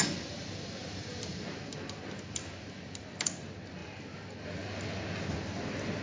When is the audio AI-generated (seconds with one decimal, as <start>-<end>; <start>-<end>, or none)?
none